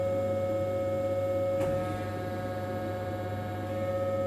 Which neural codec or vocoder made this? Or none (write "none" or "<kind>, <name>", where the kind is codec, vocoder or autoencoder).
none